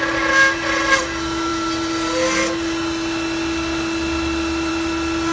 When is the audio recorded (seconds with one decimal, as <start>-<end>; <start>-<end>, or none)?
0.0-5.3